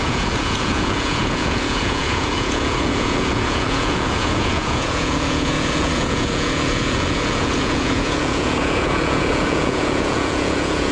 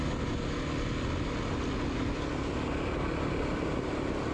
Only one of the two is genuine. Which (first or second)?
second